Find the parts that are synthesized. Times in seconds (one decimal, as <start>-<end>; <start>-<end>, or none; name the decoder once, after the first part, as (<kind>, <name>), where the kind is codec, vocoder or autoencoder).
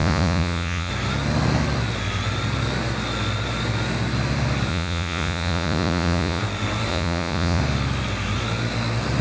0.0-0.9 (vocoder, Vocos); 4.7-6.4; 6.9-7.6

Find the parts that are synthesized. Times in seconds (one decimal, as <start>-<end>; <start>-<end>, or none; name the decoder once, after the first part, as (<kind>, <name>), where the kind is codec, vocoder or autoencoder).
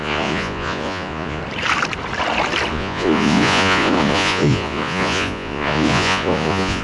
0.0-1.4 (vocoder, Vocos); 2.7-6.8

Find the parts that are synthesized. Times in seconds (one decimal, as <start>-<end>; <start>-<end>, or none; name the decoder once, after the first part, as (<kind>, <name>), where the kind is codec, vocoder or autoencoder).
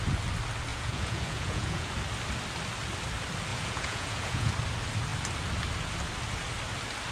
0.7-1.9 (vocoder, Vocos); 3.5-4.5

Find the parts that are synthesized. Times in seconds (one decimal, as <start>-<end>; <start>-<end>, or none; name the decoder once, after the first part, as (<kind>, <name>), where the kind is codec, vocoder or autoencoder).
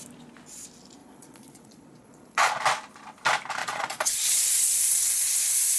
1.0-2.5 (vocoder, Vocos); 3.6-5.0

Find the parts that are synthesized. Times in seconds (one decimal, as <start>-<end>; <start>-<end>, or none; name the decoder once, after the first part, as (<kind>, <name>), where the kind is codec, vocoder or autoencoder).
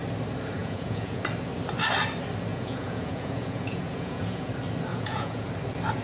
0.6-1.2 (vocoder, Vocos); 2.5-4.5; 4.9-5.5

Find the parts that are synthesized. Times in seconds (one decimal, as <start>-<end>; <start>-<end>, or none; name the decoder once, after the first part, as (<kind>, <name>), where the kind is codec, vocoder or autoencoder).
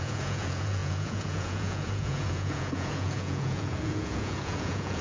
0.0-5.0 (vocoder, Vocos)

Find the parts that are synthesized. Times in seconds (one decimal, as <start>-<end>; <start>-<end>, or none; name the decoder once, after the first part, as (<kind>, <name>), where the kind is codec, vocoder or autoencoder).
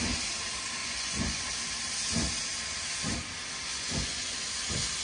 0.8-1.4 (vocoder, Vocos); 3.7-4.4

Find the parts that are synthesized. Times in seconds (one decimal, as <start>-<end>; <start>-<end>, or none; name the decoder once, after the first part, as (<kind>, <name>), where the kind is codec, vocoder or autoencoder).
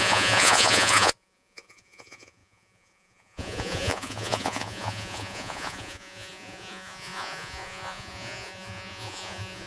0.0-9.7 (vocoder, Vocos)